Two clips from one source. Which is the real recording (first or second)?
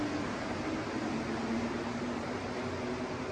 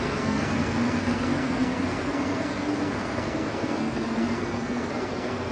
first